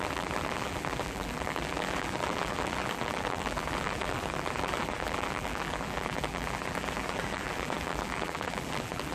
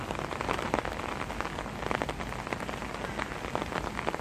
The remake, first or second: first